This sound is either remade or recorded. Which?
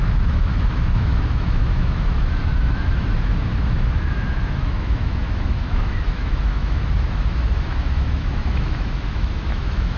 remade